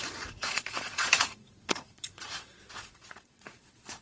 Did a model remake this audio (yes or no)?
yes